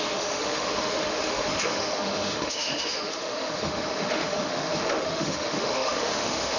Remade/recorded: remade